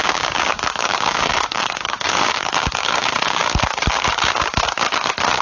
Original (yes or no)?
no